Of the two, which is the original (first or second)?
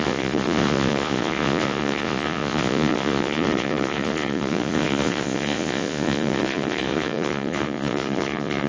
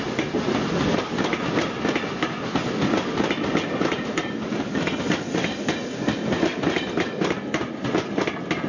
second